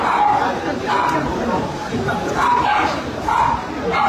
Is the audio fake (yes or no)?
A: yes